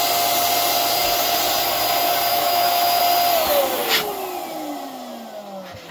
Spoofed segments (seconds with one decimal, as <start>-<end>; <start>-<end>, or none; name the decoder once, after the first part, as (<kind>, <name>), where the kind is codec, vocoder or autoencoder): 2.3-3.0 (autoencoder, DAC-VAE)

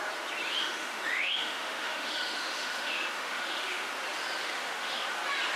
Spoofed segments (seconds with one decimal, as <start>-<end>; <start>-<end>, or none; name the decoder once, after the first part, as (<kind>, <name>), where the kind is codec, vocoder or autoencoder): 0.5-3.9 (autoencoder, DAC-VAE); 4.4-5.0

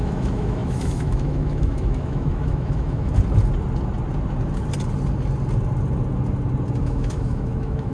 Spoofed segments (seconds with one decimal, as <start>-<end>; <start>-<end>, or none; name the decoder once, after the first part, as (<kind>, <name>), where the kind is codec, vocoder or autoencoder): 0.0-3.1 (autoencoder, DAC-VAE); 6.8-7.9

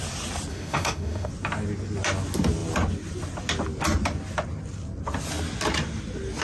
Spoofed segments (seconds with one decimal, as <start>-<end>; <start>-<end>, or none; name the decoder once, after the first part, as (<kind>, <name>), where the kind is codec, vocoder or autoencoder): 0.5-1.3 (autoencoder, DAC-VAE)

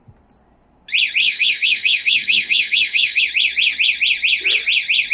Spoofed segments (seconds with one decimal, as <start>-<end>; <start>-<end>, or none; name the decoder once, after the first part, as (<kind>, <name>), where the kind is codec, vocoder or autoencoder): 1.2-3.2 (autoencoder, DAC-VAE)

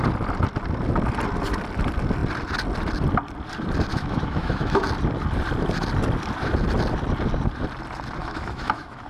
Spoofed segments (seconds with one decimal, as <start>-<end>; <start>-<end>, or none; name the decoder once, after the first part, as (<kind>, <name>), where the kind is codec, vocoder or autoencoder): 3.9-4.8 (autoencoder, DAC-VAE); 8.2-9.1